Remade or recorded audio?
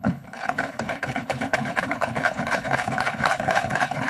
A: remade